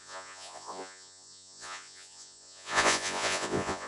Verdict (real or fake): fake